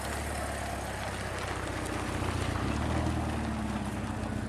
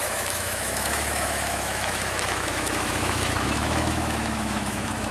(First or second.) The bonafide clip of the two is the first